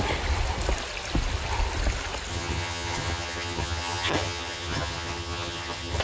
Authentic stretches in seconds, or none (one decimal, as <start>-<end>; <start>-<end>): 0.0-2.3